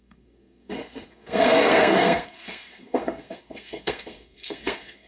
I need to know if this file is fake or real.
fake